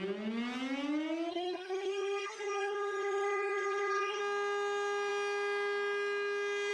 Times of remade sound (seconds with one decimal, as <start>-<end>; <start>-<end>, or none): 1.3-4.2